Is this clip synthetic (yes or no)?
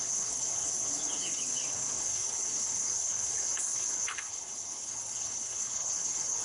yes